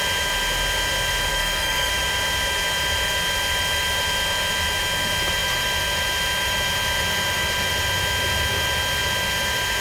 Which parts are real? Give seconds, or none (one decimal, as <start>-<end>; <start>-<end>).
0.0-1.3; 1.9-9.8